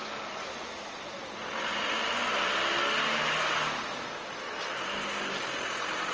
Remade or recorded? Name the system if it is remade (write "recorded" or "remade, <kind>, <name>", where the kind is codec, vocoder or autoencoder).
recorded